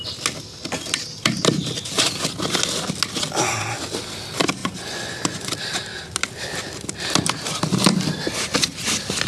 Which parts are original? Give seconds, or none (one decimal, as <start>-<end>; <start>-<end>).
0.0-4.6; 5.5-9.3

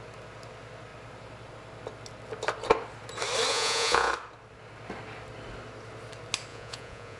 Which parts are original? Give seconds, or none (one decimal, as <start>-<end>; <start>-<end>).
0.0-3.5; 4.1-6.5

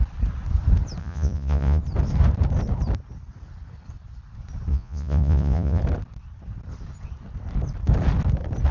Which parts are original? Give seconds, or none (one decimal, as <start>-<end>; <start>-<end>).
0.0-1.0; 1.8-4.7; 5.8-8.7

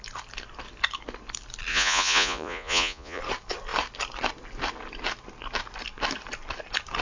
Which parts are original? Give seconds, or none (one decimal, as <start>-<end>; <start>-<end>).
0.0-1.7; 3.2-7.0

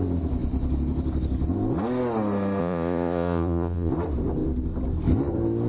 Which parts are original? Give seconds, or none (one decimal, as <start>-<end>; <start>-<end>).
0.0-2.6; 3.9-5.7

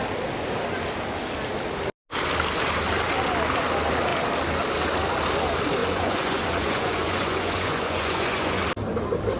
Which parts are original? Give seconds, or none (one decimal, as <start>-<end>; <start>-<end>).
0.0-5.8; 8.6-9.4

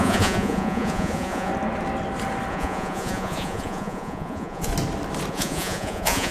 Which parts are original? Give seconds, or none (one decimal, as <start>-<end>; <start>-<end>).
1.5-2.5; 4.7-5.3